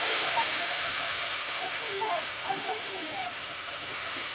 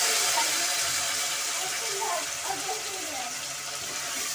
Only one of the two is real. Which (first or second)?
second